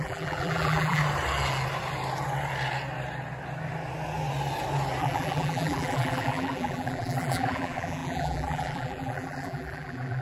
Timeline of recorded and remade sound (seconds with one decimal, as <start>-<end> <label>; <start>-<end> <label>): 0.0-1.0 remade; 1.0-5.0 recorded; 5.0-10.2 remade